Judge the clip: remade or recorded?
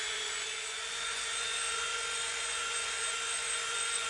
remade